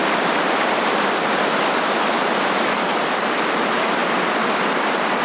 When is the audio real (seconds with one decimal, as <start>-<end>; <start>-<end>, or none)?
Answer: 3.1-4.0